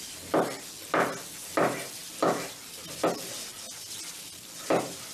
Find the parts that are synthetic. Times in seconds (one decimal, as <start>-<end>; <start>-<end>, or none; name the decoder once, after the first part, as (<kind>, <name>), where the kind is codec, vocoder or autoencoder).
none